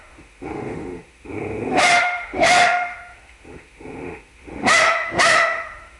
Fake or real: fake